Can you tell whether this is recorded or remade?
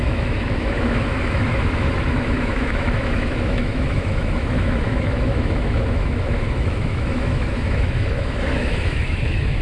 remade